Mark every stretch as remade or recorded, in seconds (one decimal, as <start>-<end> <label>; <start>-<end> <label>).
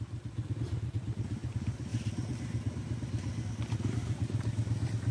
0.0-5.1 recorded